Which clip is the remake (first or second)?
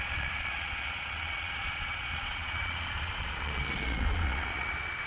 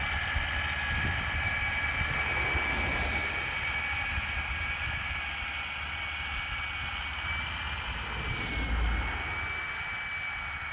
first